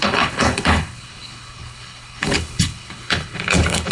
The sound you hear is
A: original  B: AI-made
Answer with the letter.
B